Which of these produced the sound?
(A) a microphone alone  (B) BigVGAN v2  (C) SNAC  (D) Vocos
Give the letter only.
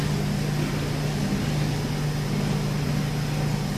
A